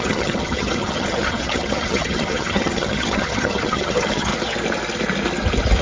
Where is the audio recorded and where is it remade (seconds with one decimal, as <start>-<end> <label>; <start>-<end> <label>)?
0.0-4.3 remade; 4.3-5.8 recorded